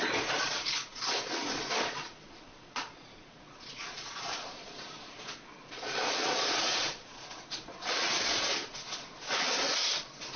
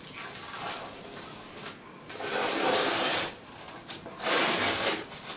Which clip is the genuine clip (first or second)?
second